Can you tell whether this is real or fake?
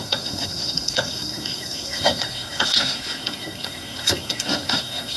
fake